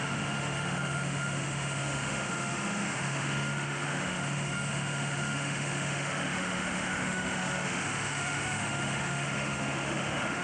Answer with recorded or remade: remade